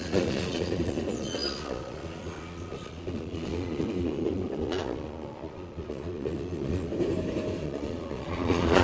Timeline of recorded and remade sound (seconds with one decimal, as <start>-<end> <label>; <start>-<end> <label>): 0.0-6.9 remade; 6.9-7.6 recorded; 7.6-8.8 remade